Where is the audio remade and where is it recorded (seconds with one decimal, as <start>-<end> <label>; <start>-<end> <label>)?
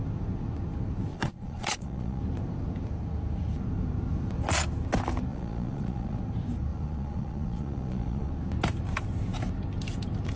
0.0-1.1 recorded; 1.1-2.2 remade; 2.2-5.3 recorded; 5.3-6.2 remade; 6.2-6.7 recorded; 6.7-8.3 remade; 8.3-10.4 recorded